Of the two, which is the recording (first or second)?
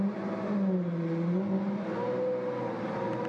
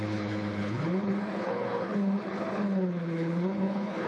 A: first